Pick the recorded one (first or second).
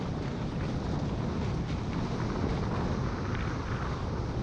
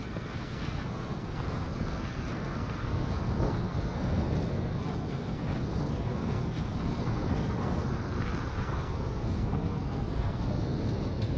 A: first